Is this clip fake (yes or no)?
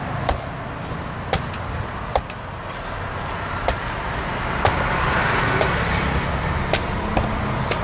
no